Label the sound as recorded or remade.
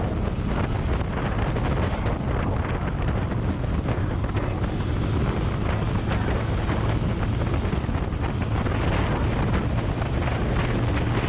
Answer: recorded